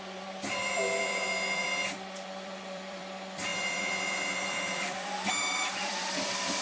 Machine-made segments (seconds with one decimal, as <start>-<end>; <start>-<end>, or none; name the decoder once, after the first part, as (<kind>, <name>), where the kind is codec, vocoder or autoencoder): 0.0-6.6 (vocoder, BigVGAN v2)